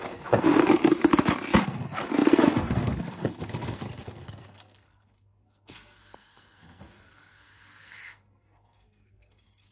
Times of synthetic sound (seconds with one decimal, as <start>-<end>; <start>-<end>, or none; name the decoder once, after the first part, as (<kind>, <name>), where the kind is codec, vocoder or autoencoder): 0.0-1.0 (codec, SNAC); 1.6-9.7